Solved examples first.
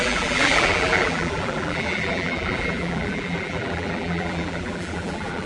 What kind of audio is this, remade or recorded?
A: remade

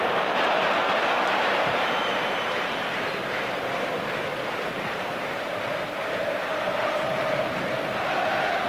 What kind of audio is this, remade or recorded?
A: remade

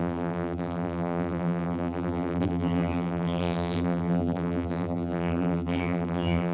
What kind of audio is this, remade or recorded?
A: remade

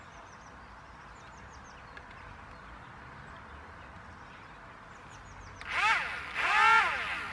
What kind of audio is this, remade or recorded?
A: recorded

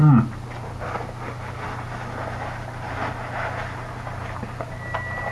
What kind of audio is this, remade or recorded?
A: recorded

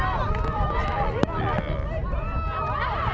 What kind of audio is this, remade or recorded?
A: recorded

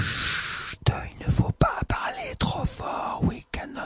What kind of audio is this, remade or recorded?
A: recorded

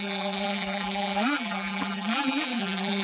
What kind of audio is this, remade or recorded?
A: remade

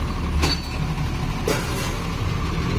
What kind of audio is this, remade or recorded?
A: recorded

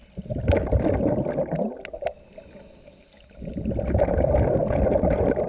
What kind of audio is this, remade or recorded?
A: recorded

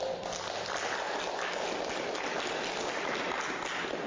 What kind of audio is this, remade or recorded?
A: recorded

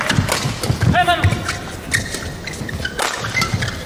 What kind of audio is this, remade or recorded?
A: recorded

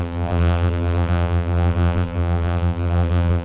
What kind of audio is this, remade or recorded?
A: remade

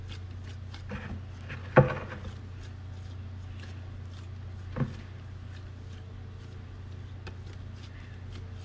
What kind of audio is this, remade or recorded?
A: recorded